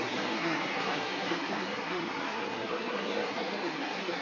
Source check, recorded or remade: remade